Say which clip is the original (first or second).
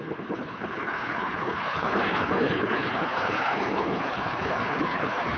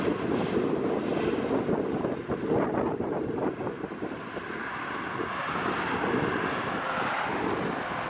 second